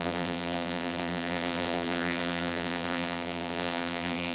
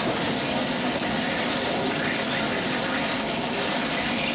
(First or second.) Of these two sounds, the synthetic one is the first